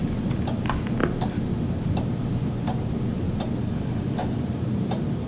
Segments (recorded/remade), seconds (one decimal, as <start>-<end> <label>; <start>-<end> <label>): 0.0-3.6 recorded; 3.6-4.4 remade; 4.4-5.3 recorded